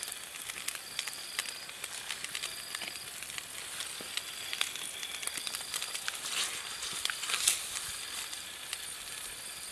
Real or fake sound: real